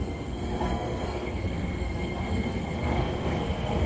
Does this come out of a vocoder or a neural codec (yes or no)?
yes